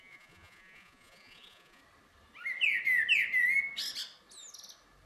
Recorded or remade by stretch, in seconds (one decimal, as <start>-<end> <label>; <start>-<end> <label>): 0.0-1.8 remade; 1.8-5.1 recorded